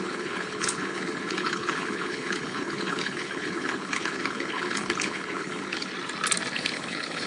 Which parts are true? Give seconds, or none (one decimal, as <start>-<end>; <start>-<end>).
5.9-6.5